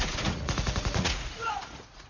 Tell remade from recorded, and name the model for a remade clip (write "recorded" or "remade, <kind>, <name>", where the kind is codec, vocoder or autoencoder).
remade, vocoder, Vocos